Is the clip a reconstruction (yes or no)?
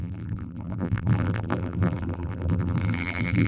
yes